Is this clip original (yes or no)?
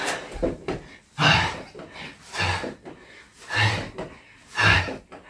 yes